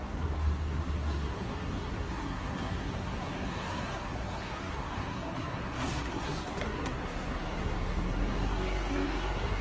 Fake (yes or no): yes